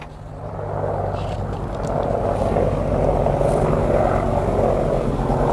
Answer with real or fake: real